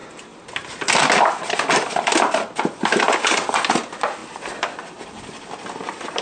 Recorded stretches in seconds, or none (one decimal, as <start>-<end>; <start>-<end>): 0.0-6.2